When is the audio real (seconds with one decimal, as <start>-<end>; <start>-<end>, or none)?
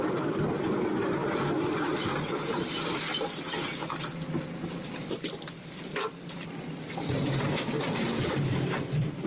1.2-2.1